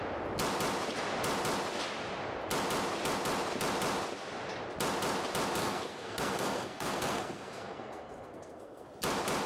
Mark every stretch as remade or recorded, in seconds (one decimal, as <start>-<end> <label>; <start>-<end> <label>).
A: 0.0-5.6 recorded; 5.6-8.9 remade; 8.9-9.5 recorded